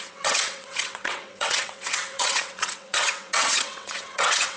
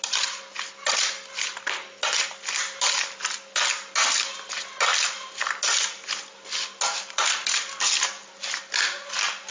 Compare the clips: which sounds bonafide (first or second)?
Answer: second